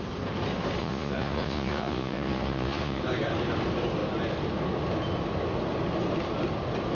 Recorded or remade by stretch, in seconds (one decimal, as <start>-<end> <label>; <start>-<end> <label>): 0.0-0.8 recorded; 0.8-3.0 remade; 3.0-6.9 recorded